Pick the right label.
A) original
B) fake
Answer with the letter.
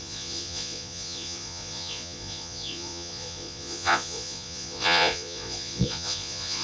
B